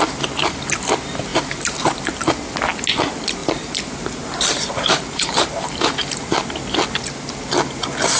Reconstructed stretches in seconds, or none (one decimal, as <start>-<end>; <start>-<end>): 1.3-2.0; 3.4-5.7